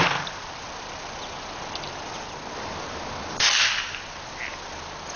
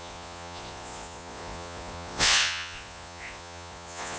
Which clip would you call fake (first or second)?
second